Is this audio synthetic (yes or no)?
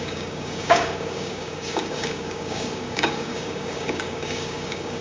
yes